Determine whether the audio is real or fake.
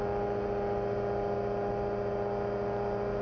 real